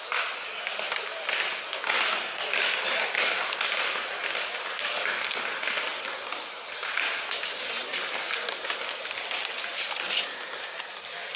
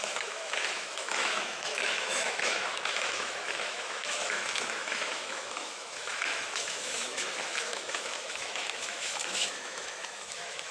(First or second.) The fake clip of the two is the second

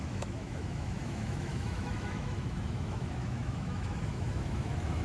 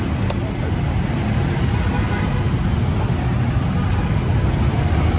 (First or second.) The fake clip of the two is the first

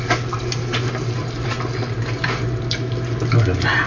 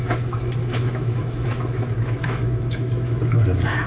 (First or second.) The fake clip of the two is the second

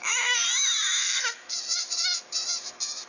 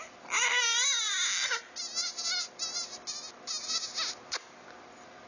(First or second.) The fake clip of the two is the first